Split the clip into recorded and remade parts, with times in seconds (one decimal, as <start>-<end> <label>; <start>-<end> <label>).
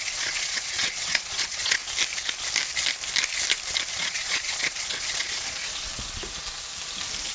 0.0-1.8 remade; 1.8-3.9 recorded; 3.9-5.9 remade; 5.9-7.3 recorded